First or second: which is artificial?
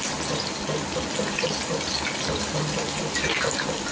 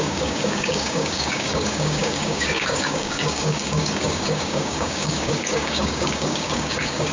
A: second